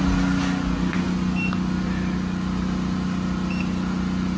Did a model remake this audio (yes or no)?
no